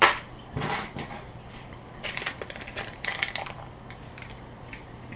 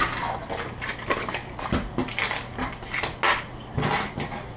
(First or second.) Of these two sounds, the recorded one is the second